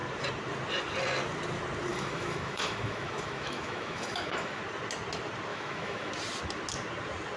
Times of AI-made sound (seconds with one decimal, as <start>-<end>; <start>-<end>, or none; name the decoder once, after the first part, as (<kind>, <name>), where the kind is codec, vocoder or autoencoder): 1.9-4.6 (autoencoder, DAC-VAE); 5.5-6.1